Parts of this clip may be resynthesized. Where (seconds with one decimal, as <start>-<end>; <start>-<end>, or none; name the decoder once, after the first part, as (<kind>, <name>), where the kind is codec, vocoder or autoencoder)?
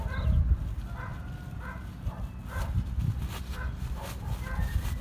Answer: none